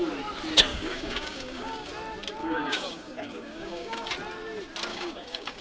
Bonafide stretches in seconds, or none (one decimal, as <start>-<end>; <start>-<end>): 0.0-0.7; 1.9-2.4; 4.1-4.9